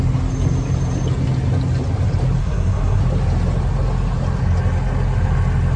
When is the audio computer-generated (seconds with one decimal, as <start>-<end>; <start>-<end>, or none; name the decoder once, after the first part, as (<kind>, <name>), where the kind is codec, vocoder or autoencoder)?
2.4-3.0 (codec, SNAC)